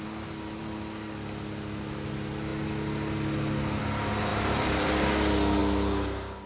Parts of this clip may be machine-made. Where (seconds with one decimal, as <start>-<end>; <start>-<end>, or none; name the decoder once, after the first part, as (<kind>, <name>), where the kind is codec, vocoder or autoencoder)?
4.3-4.9 (vocoder, BigVGAN v2)